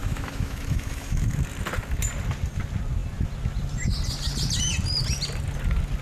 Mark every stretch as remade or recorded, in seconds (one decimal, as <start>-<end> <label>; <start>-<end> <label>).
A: 0.0-1.4 remade; 1.4-6.0 recorded